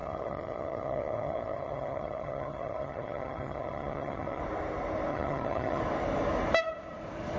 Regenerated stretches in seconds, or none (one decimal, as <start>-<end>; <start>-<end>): 0.0-4.4; 5.1-5.8